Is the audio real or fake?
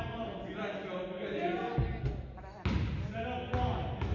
real